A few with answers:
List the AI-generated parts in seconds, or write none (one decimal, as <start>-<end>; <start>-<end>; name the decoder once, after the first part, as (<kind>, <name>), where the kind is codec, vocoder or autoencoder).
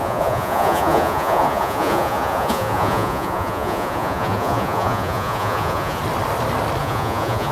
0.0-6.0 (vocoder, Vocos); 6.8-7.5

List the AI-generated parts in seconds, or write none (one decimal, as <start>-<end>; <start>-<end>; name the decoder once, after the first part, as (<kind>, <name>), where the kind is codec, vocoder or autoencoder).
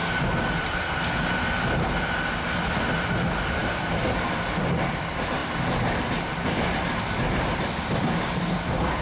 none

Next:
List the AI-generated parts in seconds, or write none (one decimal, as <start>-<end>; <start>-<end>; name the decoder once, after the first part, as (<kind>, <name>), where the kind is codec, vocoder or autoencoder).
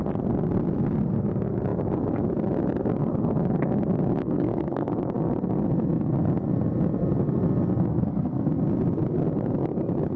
4.2-4.9 (codec, SNAC); 7.9-8.5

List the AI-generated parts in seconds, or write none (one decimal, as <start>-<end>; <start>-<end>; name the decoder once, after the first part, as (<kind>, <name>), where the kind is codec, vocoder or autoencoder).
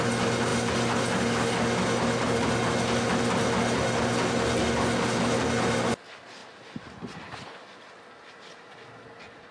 none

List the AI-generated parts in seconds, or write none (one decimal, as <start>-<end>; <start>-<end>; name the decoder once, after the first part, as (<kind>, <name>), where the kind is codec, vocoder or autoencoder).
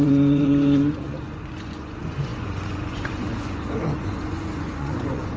0.0-5.4 (vocoder, Vocos)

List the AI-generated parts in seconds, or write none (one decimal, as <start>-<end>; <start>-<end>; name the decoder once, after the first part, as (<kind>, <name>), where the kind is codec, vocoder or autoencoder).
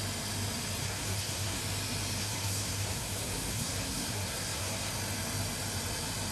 0.8-1.6 (codec, SNAC); 2.2-4.9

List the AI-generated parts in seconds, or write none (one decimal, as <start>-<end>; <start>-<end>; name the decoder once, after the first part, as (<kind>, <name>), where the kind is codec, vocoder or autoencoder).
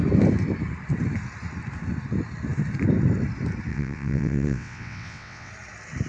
3.7-5.5 (vocoder, WaveNeXt)